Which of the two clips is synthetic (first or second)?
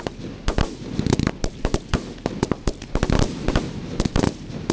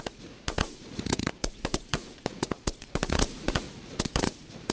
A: second